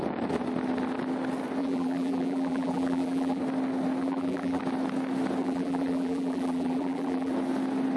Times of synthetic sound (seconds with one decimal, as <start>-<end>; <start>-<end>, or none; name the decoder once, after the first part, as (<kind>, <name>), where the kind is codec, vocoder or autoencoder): 1.6-3.4 (vocoder, BigVGAN v2); 4.0-4.6; 5.4-7.3